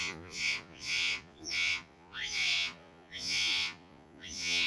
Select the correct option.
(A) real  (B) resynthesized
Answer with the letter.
B